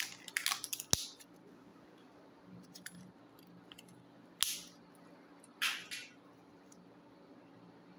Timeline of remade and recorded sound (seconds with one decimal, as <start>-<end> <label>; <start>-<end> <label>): 0.0-1.7 recorded; 1.7-3.2 remade; 3.2-6.0 recorded; 6.0-8.0 remade